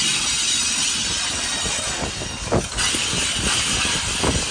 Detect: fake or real real